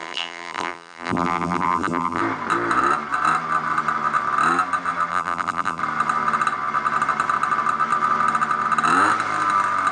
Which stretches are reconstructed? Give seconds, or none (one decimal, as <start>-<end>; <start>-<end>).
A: 0.0-2.2; 5.1-5.8